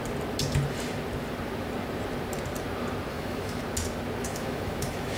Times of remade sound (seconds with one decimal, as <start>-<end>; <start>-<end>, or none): 3.1-3.6; 4.2-5.2